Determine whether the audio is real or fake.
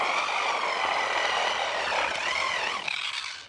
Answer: real